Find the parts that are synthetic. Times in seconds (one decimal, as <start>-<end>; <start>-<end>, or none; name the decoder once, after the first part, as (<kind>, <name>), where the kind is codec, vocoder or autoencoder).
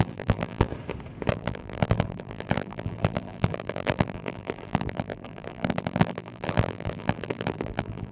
0.0-0.7 (vocoder, BigVGAN v2); 1.3-8.1